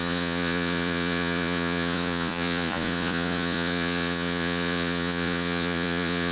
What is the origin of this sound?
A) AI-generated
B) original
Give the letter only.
A